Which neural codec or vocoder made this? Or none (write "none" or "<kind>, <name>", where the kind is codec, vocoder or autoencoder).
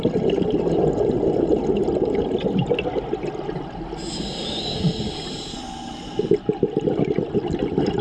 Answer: none